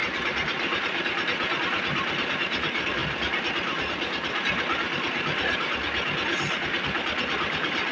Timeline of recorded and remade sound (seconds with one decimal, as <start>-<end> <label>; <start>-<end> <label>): 0.0-7.9 recorded